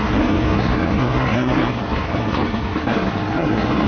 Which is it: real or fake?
fake